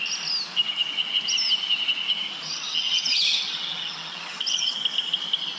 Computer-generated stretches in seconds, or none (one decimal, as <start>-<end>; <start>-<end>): 2.5-4.7